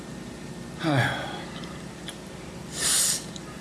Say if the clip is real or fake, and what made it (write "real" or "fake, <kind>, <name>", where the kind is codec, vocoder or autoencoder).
fake, vocoder, BigVGAN v2